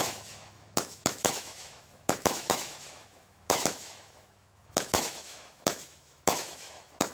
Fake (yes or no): yes